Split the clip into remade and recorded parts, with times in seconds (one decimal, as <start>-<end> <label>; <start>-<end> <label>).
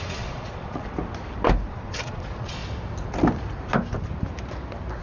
0.0-0.9 remade; 0.9-1.7 recorded; 1.7-2.6 remade; 2.6-5.0 recorded